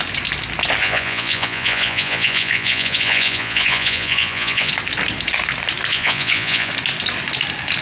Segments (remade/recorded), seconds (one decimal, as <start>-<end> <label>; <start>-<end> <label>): 0.0-0.8 recorded; 0.8-4.7 remade; 4.7-5.9 recorded; 5.9-6.7 remade; 6.7-7.8 recorded